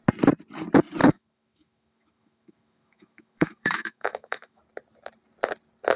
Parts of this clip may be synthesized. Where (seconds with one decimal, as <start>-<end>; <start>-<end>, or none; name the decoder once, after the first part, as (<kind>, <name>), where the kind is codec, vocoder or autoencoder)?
1.0-4.6 (autoencoder, DAC-VAE)